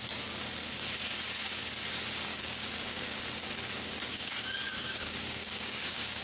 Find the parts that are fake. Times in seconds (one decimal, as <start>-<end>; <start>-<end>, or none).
2.3-3.2; 4.1-6.2